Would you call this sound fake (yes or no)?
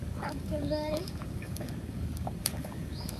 yes